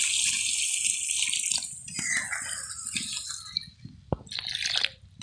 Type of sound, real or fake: real